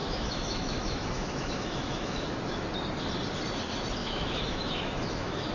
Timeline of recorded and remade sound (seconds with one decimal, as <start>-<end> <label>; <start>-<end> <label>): 0.0-2.6 remade; 2.6-4.0 recorded; 4.0-5.5 remade